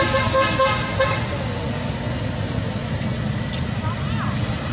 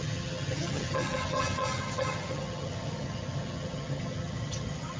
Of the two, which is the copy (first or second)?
second